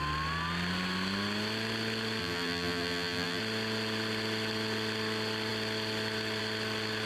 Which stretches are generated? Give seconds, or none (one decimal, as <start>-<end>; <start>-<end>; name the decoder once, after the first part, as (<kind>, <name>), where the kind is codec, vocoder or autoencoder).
2.2-3.4 (vocoder, BigVGAN v2)